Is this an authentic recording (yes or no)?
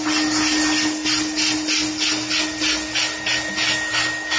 yes